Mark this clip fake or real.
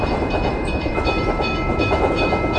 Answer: fake